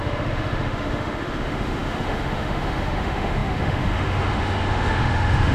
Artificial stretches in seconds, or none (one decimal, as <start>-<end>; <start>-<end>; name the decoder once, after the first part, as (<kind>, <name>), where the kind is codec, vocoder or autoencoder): 0.0-5.5 (autoencoder, DAC-VAE)